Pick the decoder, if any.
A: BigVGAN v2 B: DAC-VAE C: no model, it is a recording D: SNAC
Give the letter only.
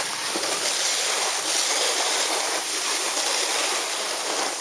C